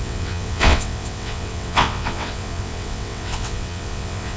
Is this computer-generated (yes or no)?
yes